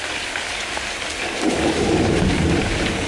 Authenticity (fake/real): fake